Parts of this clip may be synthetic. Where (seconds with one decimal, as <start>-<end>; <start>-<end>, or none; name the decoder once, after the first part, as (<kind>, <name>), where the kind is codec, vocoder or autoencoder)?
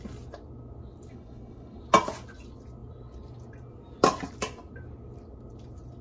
1.1-1.8 (codec, HILCodec)